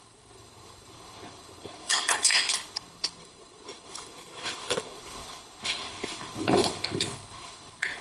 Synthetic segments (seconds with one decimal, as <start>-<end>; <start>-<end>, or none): 0.0-8.0

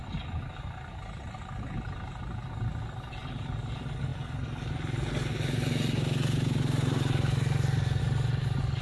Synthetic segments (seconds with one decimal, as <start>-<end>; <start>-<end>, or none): none